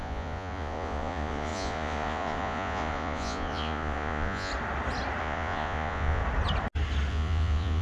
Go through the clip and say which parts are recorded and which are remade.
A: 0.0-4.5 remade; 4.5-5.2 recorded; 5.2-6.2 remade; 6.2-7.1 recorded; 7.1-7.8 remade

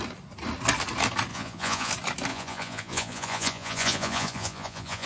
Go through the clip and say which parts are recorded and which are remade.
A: 0.0-1.3 recorded; 1.3-1.9 remade; 1.9-2.3 recorded; 2.3-5.1 remade

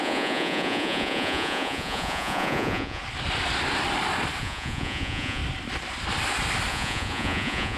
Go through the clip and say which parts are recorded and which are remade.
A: 0.0-3.0 remade; 3.0-4.4 recorded; 4.4-5.4 remade; 5.4-6.7 recorded; 6.7-7.8 remade